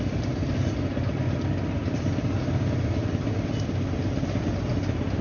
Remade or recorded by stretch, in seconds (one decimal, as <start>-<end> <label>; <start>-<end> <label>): 0.0-5.2 recorded